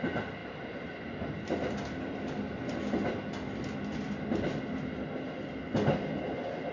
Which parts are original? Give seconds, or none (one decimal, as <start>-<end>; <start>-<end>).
0.0-6.7

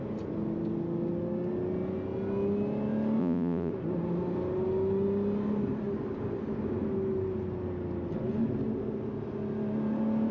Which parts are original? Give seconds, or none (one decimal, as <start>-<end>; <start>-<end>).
0.0-3.2; 3.7-10.3

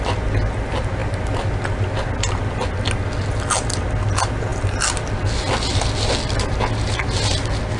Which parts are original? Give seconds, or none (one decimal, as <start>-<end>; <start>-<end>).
0.0-7.8

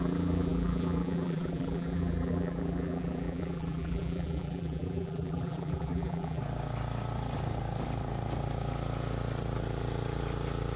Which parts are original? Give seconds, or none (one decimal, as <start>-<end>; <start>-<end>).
6.4-10.8

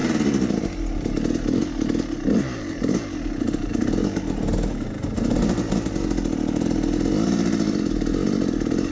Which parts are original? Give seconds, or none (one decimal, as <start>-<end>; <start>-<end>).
0.0-8.9